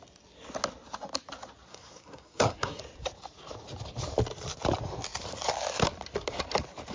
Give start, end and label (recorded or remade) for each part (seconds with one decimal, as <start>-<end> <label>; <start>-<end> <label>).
0.0-1.7 recorded; 1.7-2.8 remade; 2.8-6.9 recorded

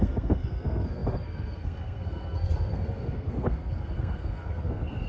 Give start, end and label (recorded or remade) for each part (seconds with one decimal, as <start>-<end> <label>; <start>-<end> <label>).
0.0-5.1 remade

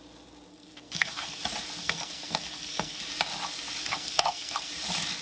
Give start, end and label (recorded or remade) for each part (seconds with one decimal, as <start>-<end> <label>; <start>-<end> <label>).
0.0-0.5 recorded; 0.5-1.4 remade; 1.4-1.8 recorded; 1.8-3.0 remade; 3.0-3.8 recorded; 3.8-4.7 remade; 4.7-5.2 recorded